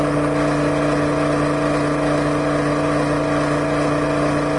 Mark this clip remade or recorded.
recorded